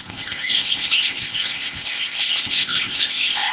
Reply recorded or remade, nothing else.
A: remade